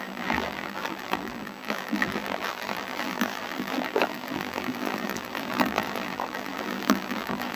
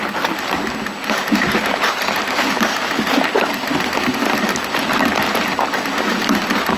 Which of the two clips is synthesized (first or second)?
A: first